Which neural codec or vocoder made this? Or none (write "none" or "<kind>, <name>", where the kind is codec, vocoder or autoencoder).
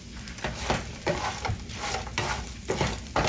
none